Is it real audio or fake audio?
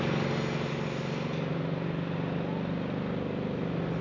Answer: real